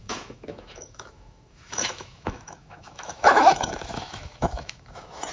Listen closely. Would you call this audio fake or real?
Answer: fake